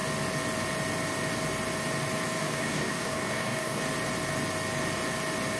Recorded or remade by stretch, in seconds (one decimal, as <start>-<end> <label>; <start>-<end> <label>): 0.0-2.4 recorded; 2.4-3.8 remade; 3.8-5.6 recorded